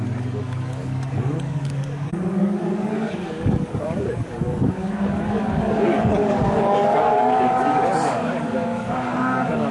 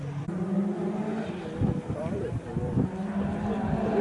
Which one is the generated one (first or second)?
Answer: first